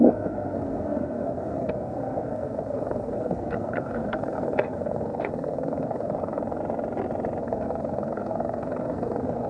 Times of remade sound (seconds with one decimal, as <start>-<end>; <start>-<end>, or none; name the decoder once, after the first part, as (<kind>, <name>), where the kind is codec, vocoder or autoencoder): 0.0-6.6 (codec, SNAC); 7.4-9.5